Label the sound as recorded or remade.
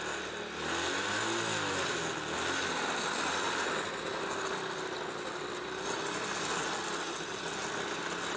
recorded